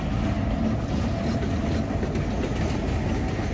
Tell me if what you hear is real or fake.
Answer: real